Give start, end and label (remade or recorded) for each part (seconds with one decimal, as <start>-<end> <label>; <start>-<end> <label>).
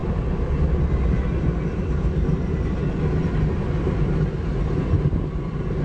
0.0-5.8 recorded